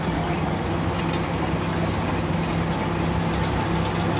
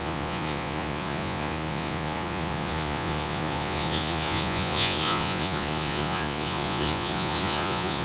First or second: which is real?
first